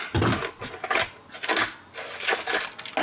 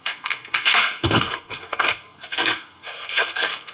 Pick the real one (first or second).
first